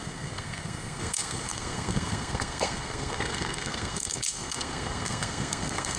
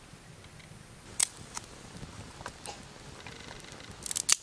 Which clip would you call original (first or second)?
second